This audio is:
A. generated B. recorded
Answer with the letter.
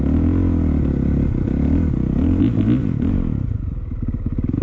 B